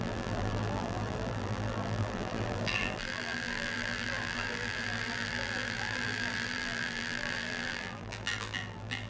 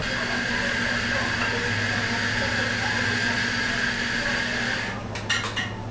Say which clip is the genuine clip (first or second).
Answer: second